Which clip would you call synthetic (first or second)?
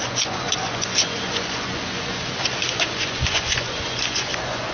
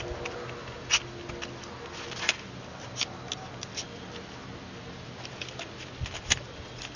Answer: first